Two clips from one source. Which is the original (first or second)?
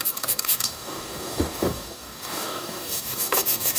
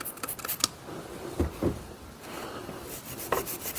second